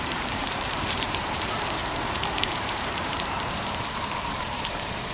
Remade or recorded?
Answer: remade